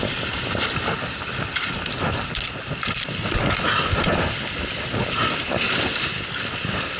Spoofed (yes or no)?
no